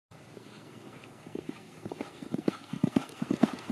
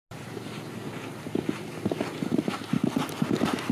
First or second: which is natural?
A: second